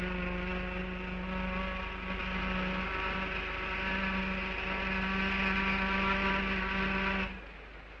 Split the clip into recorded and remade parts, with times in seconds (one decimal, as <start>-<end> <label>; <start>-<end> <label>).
0.0-8.0 recorded